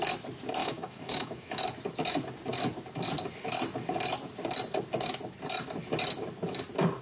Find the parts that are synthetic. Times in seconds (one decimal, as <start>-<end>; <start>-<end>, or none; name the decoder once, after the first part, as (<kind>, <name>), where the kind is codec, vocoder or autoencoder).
0.6-1.6 (autoencoder, DAC-VAE)